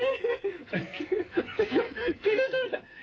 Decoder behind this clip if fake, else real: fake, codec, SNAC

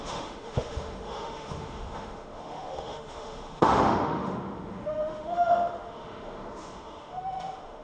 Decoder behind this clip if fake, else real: fake, autoencoder, DAC-VAE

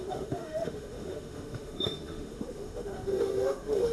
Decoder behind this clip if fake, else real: fake, autoencoder, DAC-VAE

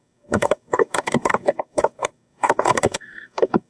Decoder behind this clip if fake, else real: fake, codec, DAC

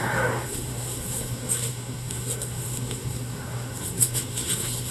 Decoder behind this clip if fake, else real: fake, codec, SNAC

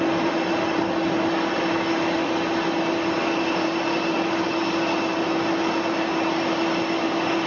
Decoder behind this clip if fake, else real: real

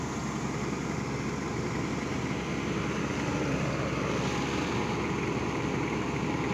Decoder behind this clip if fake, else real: real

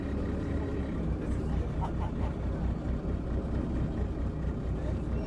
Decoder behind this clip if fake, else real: real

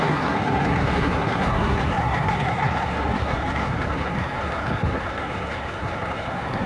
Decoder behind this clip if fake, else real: fake, codec, SNAC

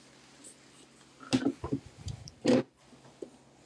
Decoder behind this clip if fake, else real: real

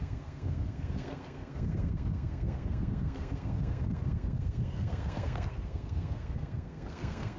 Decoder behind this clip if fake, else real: fake, codec, SNAC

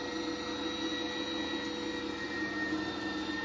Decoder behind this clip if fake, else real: real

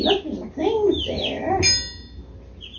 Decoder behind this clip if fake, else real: real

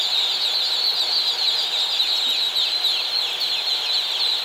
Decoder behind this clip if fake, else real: real